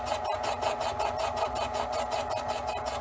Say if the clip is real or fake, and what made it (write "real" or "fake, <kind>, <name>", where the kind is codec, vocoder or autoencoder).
real